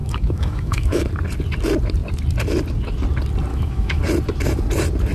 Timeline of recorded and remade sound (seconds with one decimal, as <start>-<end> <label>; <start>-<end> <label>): 0.0-1.0 remade; 1.0-3.5 recorded; 3.5-4.0 remade; 4.0-5.1 recorded

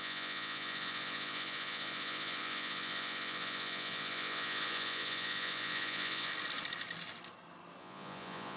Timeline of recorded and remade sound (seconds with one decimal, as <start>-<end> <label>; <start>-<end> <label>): 0.0-6.3 remade; 6.3-7.8 recorded; 7.8-8.6 remade

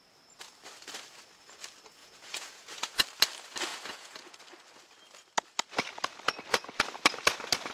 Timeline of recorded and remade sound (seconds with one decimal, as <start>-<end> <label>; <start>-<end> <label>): 0.0-2.0 recorded; 2.0-3.0 remade; 3.0-3.7 recorded; 3.7-4.4 remade; 4.4-7.7 recorded